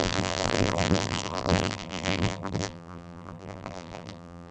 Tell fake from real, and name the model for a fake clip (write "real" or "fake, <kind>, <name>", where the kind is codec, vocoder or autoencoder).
fake, vocoder, BigVGAN v2